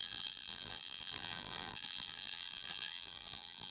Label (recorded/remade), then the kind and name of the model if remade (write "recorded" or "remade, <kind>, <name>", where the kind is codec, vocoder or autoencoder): remade, vocoder, BigVGAN v2